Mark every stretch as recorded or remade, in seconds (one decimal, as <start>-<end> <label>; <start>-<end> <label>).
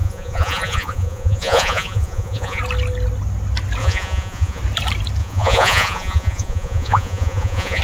0.0-2.6 remade; 2.6-3.8 recorded; 3.8-4.6 remade; 4.6-5.2 recorded; 5.2-7.8 remade